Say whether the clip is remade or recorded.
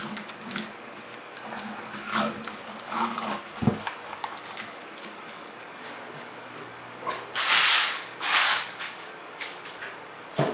remade